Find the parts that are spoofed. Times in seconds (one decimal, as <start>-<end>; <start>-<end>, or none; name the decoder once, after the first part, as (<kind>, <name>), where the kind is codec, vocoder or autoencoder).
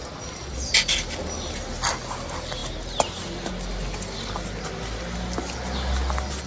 none